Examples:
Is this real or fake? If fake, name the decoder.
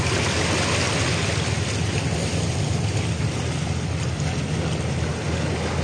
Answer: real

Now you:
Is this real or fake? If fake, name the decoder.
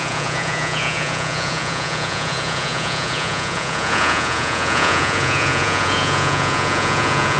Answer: fake, vocoder, Vocos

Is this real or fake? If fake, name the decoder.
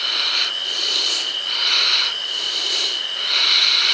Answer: real